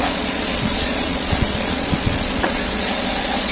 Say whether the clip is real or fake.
fake